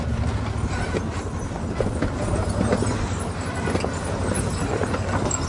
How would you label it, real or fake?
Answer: real